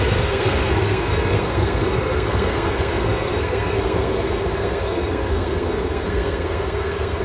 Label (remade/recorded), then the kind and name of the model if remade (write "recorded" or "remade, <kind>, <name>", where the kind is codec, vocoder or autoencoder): remade, codec, SNAC